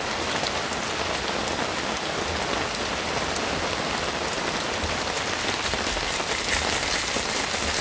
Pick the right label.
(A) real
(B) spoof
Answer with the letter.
A